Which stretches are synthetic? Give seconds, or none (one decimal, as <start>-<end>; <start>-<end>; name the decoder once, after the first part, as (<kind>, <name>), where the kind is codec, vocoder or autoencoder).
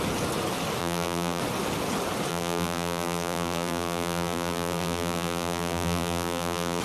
0.8-1.4 (vocoder, BigVGAN v2); 2.3-6.8